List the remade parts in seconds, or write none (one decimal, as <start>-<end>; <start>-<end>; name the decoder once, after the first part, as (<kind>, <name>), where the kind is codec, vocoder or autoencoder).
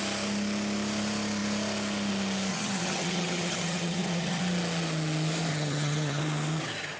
2.5-4.4 (vocoder, HiFi-GAN); 5.5-6.2